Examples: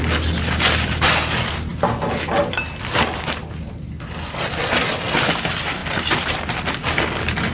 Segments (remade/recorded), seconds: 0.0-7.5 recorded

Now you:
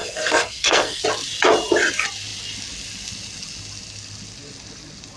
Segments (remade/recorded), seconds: 0.0-1.0 remade; 1.0-5.2 recorded

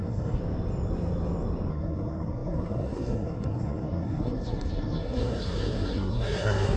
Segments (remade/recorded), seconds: 0.0-0.4 remade; 0.4-1.7 recorded; 1.7-6.8 remade

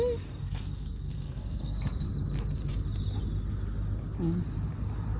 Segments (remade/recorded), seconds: 0.0-0.4 recorded; 0.4-2.1 remade; 2.1-5.2 recorded

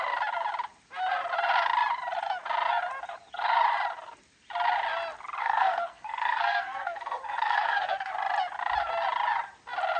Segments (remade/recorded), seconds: 0.0-5.4 recorded; 5.4-8.1 remade; 8.1-10.0 recorded

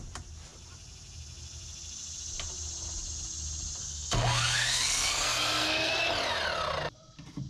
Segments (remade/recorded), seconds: 0.0-3.8 recorded; 3.8-5.9 remade; 5.9-7.5 recorded

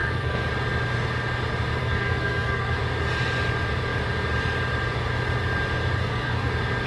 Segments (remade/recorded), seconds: 0.0-0.5 remade; 0.5-1.8 recorded; 1.8-2.8 remade; 2.8-6.0 recorded; 6.0-6.5 remade; 6.5-6.9 recorded